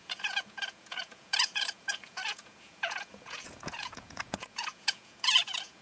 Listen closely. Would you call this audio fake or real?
fake